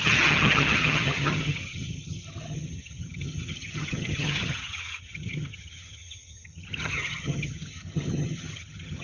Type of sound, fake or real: fake